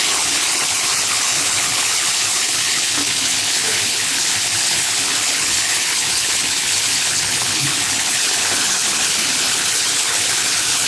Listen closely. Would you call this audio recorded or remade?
remade